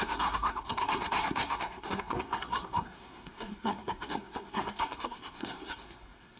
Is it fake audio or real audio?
fake